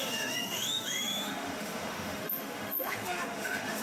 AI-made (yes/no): yes